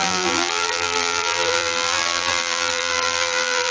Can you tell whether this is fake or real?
fake